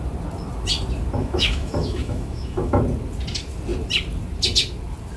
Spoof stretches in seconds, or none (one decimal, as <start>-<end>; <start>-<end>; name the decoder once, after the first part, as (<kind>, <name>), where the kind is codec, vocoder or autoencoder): 1.2-2.8 (autoencoder, DAC-VAE)